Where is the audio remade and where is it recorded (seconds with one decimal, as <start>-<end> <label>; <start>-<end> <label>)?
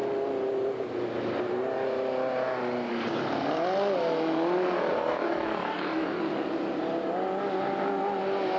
0.0-4.9 recorded; 4.9-6.2 remade; 6.2-8.6 recorded